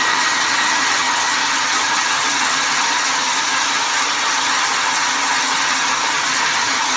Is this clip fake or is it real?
fake